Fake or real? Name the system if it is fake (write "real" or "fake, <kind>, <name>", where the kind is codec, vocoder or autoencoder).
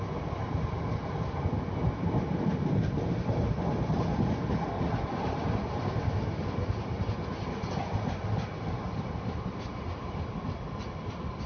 real